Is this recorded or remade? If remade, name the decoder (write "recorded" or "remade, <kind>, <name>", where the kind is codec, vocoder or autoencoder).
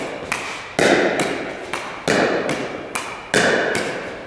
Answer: recorded